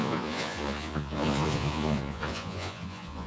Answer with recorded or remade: remade